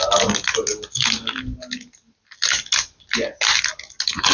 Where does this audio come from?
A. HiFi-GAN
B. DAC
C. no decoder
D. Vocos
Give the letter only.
C